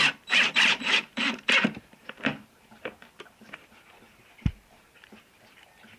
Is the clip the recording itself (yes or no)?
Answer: no